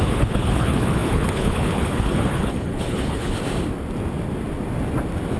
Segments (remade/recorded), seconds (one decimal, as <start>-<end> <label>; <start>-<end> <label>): 0.0-3.3 remade; 3.3-5.4 recorded